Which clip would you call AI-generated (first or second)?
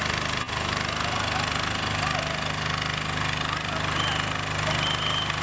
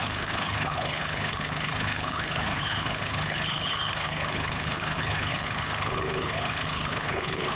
second